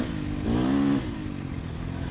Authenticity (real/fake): real